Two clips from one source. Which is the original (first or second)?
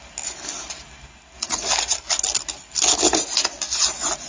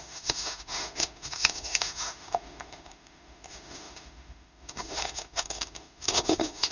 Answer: first